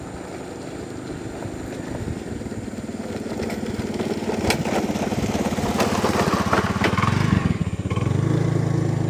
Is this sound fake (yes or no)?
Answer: no